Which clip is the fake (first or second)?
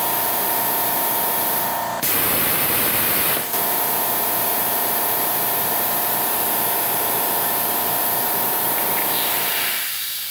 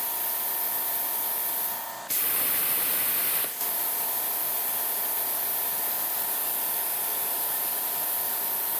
first